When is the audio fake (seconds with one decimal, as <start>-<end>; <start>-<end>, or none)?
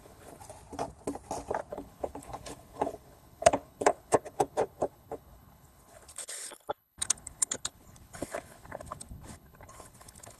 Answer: 0.0-0.4; 1.7-10.4